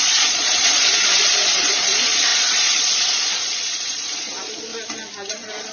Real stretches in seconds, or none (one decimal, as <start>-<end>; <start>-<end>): 4.7-5.3